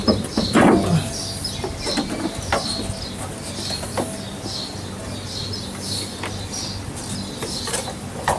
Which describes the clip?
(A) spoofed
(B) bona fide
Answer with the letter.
B